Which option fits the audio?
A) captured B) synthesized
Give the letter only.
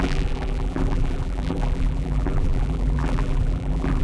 B